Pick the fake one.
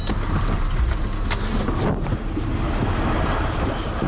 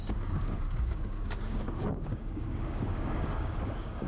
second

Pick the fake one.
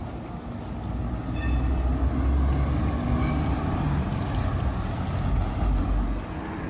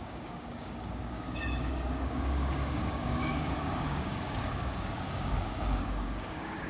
second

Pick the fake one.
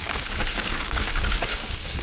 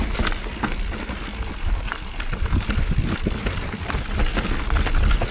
first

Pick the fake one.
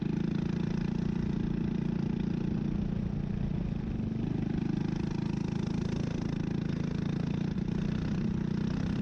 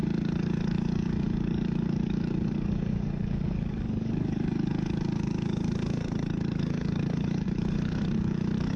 second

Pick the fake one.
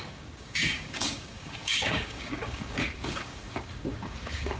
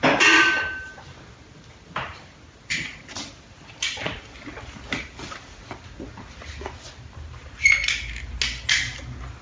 first